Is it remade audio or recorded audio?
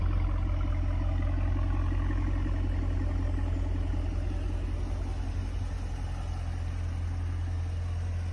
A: recorded